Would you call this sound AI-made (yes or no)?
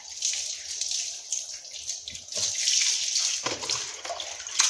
no